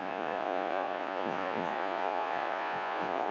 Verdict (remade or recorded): remade